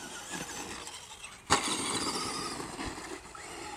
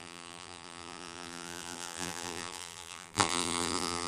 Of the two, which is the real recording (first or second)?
first